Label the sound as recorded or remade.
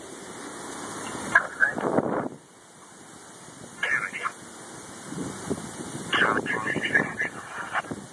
recorded